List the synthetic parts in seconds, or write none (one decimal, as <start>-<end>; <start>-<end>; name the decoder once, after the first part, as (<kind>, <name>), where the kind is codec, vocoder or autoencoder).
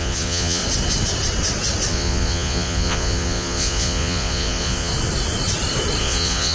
0.0-0.6 (vocoder, Vocos); 1.9-4.9; 6.0-6.5